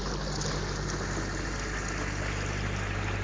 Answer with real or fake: real